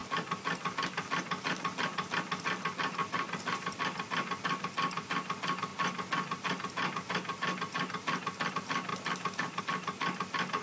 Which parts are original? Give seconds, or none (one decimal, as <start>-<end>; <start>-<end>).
0.7-3.0; 4.0-8.9; 9.6-10.6